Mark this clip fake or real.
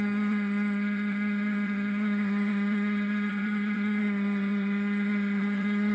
fake